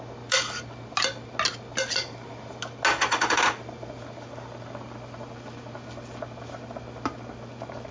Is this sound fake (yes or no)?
no